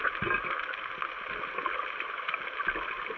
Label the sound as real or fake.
real